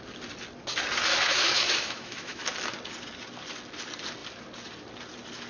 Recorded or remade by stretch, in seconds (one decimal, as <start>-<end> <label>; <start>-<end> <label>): 0.0-1.1 recorded; 1.1-2.4 remade; 2.4-5.5 recorded